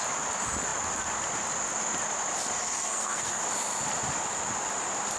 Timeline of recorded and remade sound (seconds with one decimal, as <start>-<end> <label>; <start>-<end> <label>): 0.0-2.6 recorded; 2.6-3.4 remade; 3.4-5.2 recorded

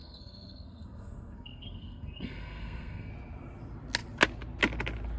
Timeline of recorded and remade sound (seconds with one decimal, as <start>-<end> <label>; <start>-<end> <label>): 0.0-3.1 remade; 3.1-5.2 recorded

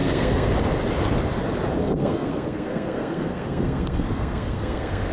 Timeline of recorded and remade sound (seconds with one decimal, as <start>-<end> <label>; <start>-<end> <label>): 0.0-0.5 remade; 0.5-1.8 recorded; 1.8-5.1 remade

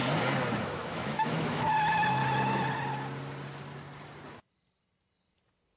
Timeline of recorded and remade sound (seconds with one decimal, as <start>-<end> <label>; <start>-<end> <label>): 0.0-0.6 recorded; 0.6-2.2 remade; 2.2-5.8 recorded

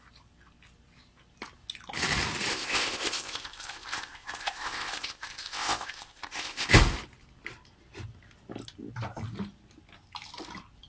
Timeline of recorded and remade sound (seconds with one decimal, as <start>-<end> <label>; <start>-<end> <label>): 0.0-2.5 recorded; 2.5-6.7 remade; 6.7-10.9 recorded

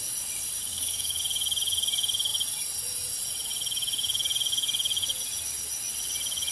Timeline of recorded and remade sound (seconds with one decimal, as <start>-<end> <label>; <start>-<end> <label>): 0.0-0.6 recorded; 0.6-1.2 remade; 1.2-6.5 recorded